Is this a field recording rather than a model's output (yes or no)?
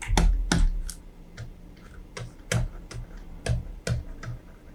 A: yes